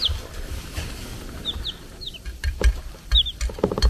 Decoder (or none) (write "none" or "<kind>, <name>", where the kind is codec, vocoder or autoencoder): vocoder, BigVGAN v2